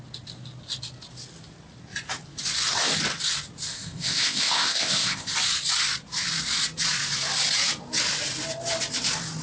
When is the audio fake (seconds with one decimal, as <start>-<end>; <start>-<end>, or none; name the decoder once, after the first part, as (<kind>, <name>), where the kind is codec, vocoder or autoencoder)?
3.7-5.3 (codec, ZipCodec)